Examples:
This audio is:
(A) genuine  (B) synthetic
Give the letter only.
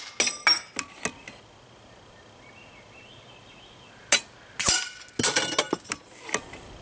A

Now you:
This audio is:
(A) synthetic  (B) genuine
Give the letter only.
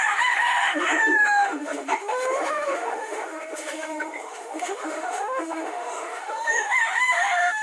A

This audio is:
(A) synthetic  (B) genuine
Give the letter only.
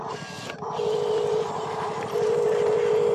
B